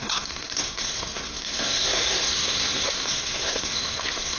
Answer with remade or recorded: remade